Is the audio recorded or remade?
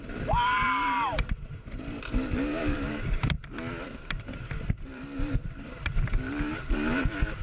remade